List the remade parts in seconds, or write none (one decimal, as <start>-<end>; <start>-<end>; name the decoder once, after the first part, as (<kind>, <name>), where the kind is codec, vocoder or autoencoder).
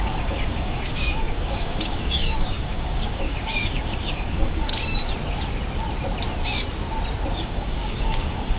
0.0-4.7 (codec, DAC); 7.3-8.6